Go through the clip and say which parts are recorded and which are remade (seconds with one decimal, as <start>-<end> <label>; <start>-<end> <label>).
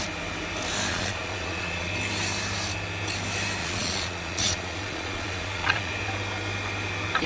0.0-0.9 recorded; 0.9-1.9 remade; 1.9-3.6 recorded; 3.6-5.9 remade; 5.9-7.3 recorded